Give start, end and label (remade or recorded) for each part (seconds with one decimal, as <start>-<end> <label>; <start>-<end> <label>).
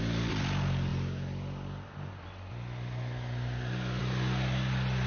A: 0.0-5.1 recorded